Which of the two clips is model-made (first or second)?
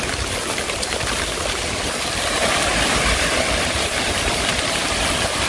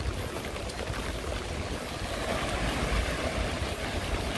first